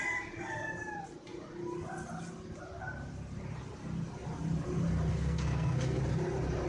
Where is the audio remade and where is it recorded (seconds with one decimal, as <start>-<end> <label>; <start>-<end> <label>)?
0.0-5.1 recorded; 5.1-6.0 remade; 6.0-6.7 recorded